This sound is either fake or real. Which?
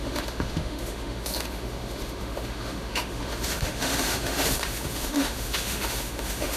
fake